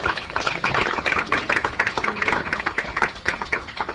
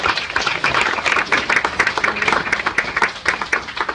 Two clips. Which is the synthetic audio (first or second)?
first